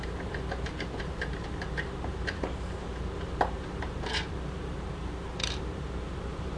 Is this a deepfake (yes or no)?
yes